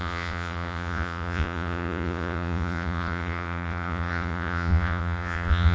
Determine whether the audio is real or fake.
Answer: fake